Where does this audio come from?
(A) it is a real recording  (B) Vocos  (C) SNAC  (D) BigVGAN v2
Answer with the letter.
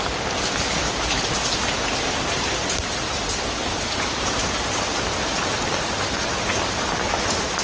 A